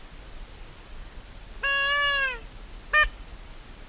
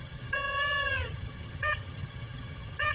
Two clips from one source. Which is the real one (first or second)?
first